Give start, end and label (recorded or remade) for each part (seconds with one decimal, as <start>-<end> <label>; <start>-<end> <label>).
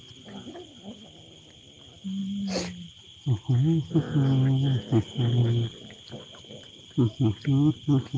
0.0-8.2 recorded